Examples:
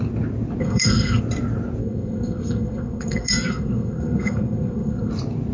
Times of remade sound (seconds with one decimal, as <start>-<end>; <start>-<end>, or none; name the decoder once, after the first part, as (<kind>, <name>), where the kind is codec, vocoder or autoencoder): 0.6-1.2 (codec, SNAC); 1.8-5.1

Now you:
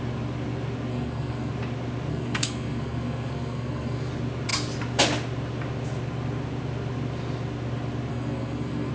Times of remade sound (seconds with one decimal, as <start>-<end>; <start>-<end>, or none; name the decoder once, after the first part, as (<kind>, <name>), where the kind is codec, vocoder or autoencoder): 0.9-1.5 (codec, SNAC); 2.1-4.1; 8.1-8.9

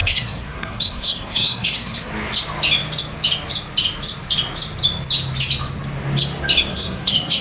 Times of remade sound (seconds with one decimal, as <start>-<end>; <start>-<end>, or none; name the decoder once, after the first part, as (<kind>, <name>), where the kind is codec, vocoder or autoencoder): 0.0-2.1 (codec, SNAC); 6.7-7.4

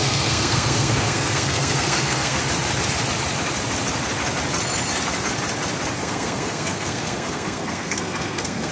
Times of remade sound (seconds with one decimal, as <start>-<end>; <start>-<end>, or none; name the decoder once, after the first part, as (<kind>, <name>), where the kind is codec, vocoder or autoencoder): 0.0-2.4 (codec, SNAC); 6.0-8.7

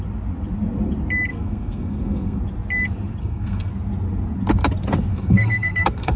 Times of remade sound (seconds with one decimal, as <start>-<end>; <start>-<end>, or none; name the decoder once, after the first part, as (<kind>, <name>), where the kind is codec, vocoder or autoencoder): 1.3-2.4 (codec, SNAC); 3.2-3.7; 5.1-6.2

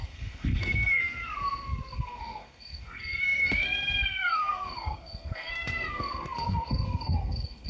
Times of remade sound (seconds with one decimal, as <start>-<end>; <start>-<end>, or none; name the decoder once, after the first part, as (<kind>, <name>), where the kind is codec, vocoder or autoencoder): 0.0-7.7 (codec, SNAC)

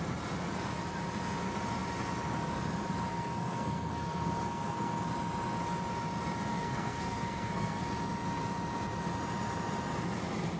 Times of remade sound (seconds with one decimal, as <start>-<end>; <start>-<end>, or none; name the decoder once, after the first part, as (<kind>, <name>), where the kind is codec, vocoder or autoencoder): 3.1-5.1 (codec, SNAC); 6.5-7.8

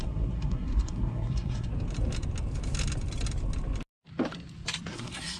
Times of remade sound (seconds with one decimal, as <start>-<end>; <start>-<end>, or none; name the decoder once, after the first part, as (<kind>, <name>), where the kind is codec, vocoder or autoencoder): 0.0-1.7 (codec, SNAC); 4.9-5.4